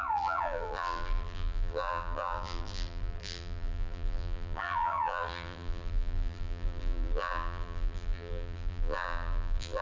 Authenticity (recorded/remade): remade